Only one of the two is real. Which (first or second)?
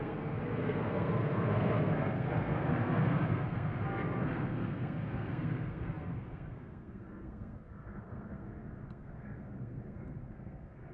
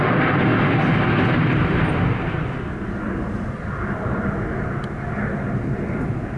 second